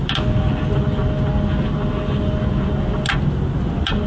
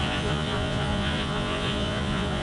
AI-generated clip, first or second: second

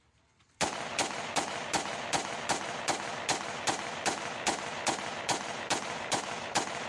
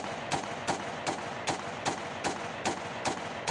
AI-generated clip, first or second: second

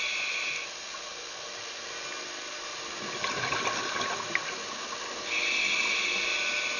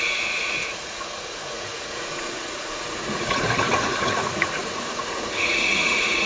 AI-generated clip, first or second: second